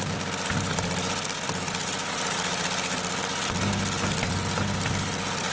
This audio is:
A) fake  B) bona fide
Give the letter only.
B